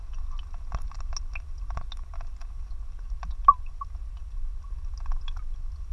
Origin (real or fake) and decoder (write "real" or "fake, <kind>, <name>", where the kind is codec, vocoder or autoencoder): real